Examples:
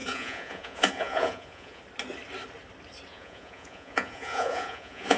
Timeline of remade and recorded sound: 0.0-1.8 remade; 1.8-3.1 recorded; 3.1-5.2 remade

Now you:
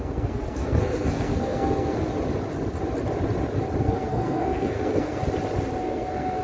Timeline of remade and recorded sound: 0.0-2.1 remade; 2.1-3.8 recorded; 3.8-5.2 remade; 5.2-5.8 recorded; 5.8-6.4 remade

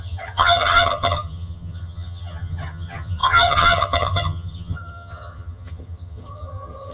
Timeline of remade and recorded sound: 0.0-6.9 remade

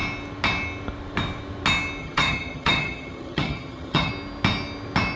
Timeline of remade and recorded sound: 0.0-2.0 recorded; 2.0-4.1 remade; 4.1-5.2 recorded

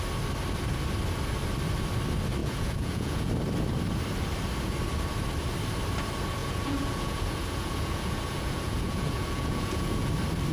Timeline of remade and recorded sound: 0.0-2.4 recorded; 2.4-3.3 remade; 3.3-6.4 recorded; 6.4-10.1 remade; 10.1-10.5 recorded

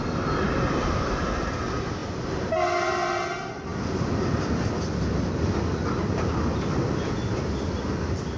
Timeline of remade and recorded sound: 0.0-8.4 recorded

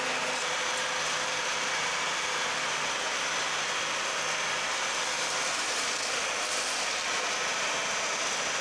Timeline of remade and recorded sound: 0.0-1.5 recorded; 1.5-6.2 remade; 6.2-8.6 recorded

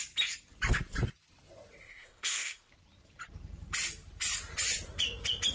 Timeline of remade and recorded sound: 0.0-1.8 recorded; 1.8-2.7 remade; 2.7-5.5 recorded